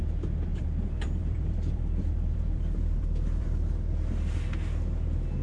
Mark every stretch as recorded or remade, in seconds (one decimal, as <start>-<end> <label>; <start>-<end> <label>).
0.0-0.5 recorded; 0.5-3.7 remade; 3.7-5.4 recorded